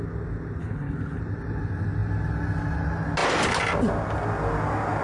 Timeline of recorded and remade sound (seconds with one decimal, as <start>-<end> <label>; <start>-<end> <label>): 0.0-0.6 recorded; 0.6-1.2 remade; 1.2-5.0 recorded